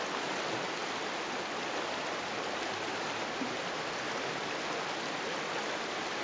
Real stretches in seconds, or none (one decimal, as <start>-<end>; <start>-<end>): 0.0-6.2